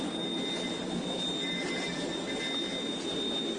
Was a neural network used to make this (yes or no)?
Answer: no